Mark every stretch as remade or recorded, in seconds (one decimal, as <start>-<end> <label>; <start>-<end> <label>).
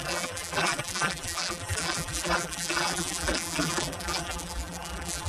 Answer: 0.0-5.3 remade